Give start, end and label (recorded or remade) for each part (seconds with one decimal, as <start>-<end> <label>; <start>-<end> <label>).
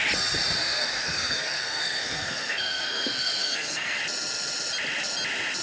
0.0-0.6 recorded; 0.6-4.0 remade; 4.0-5.6 recorded